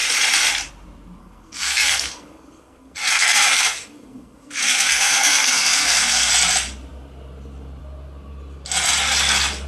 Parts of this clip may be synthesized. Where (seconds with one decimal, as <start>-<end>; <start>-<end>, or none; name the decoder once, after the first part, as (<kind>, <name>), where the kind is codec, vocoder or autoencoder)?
1.2-6.3 (codec, SNAC)